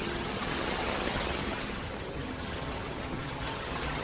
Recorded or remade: remade